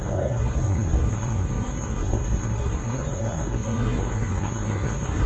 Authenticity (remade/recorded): remade